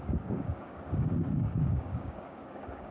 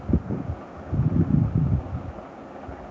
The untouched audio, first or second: second